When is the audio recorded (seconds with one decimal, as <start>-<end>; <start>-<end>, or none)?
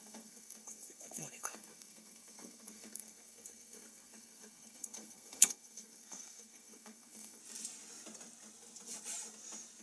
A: 7.4-9.8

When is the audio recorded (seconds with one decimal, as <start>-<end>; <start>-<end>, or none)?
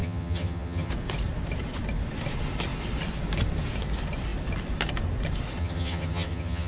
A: 0.9-5.6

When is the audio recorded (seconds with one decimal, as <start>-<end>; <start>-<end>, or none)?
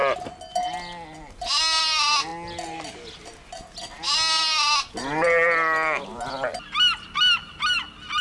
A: 0.0-8.2